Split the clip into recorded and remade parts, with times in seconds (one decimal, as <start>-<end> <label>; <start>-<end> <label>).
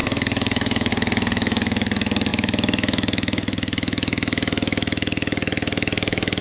0.0-6.4 remade